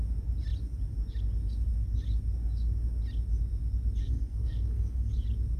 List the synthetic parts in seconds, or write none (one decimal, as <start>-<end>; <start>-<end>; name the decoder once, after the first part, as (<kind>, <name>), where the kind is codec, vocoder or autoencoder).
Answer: 4.0-5.1 (codec, SNAC)